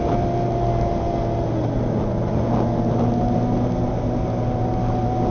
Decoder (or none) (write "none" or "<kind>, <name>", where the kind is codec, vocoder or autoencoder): none